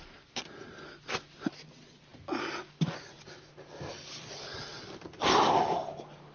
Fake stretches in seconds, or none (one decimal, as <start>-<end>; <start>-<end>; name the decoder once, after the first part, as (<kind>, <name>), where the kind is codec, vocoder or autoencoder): none